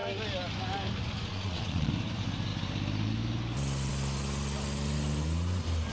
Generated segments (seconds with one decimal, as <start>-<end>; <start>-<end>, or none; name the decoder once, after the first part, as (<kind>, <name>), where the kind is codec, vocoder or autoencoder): 1.3-1.9 (vocoder, Vocos)